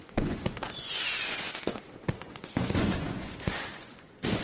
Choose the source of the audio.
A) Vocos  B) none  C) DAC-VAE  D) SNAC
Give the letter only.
A